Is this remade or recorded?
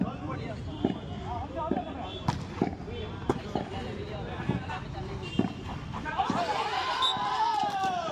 remade